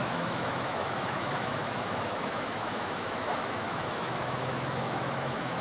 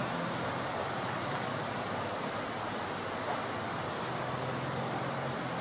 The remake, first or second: first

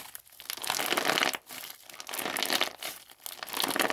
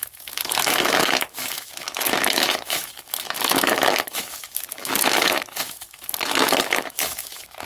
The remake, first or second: second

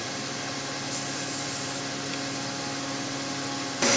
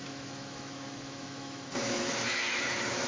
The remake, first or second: second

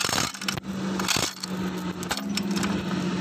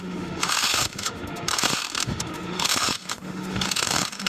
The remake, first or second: second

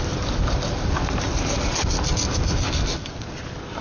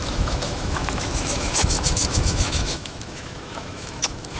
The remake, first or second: second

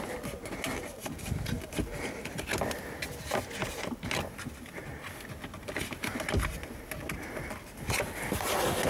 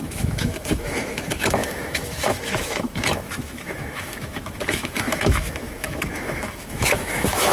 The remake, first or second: second